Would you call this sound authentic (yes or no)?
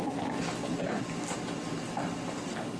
yes